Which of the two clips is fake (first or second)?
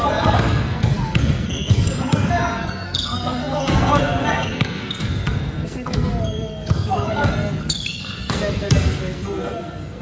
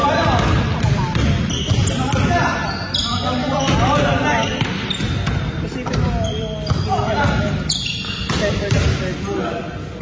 first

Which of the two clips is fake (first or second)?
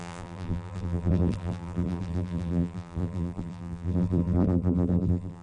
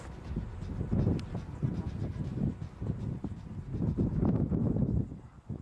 first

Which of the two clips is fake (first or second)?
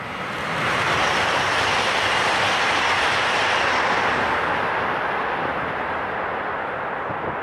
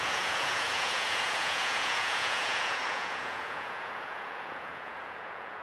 second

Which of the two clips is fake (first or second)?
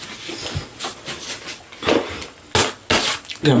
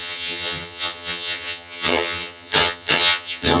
second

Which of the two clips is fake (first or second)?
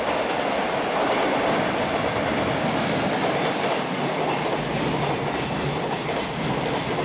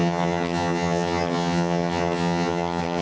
second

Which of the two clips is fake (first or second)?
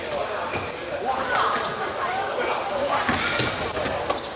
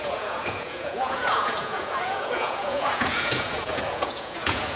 second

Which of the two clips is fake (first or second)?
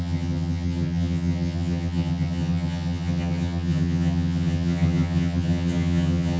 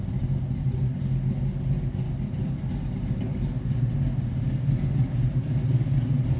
first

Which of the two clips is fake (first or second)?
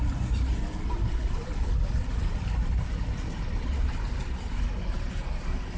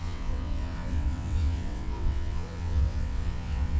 second